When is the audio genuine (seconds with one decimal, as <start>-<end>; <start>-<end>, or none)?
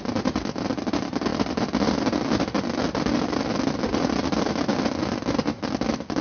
0.0-6.2